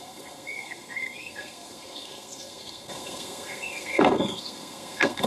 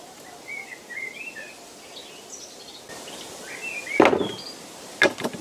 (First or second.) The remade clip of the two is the first